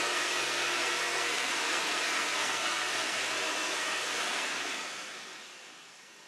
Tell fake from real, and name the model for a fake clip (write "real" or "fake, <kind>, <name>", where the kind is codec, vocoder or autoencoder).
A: fake, codec, SNAC